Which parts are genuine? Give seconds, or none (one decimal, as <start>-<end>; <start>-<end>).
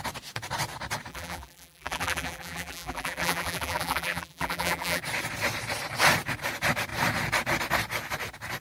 0.0-1.1; 5.0-8.6